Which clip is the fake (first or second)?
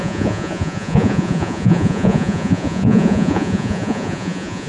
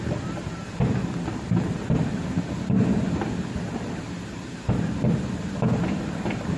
first